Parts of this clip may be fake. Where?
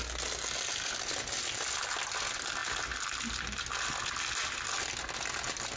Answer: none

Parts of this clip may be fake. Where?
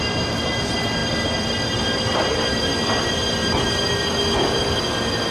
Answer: none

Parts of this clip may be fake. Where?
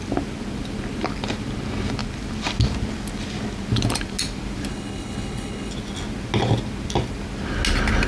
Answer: 4.7-5.7 (codec, HILCodec)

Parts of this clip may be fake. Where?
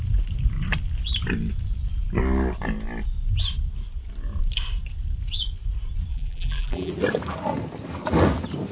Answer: 6.1-6.9 (vocoder, BigVGAN v2)